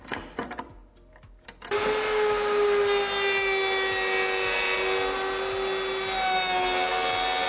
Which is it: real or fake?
real